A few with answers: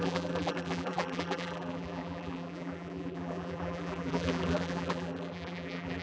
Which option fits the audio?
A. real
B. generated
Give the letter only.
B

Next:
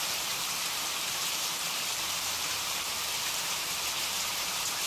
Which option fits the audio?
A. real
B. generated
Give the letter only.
B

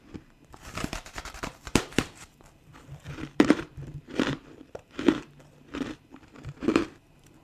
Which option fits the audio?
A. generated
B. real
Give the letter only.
A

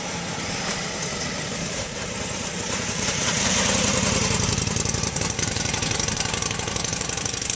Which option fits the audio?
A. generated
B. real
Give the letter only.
A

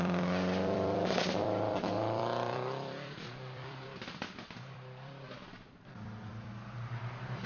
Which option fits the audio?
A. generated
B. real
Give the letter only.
A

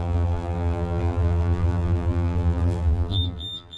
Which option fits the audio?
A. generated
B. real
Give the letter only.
A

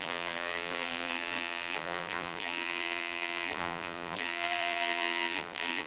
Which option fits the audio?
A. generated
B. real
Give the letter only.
A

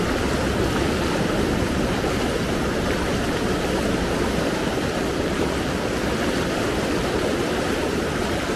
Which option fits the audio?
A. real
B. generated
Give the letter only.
B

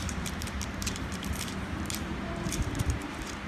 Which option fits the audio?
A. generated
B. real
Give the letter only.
A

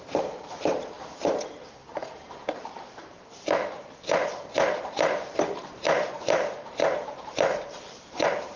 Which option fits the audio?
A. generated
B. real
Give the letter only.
A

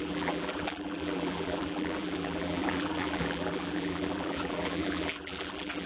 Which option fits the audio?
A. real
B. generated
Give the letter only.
B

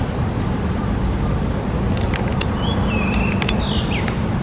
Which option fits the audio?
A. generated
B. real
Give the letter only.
B